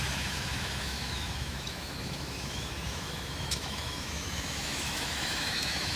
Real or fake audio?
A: fake